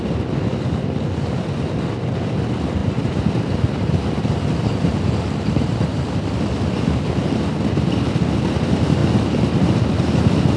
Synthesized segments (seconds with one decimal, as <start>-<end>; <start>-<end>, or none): 2.8-5.8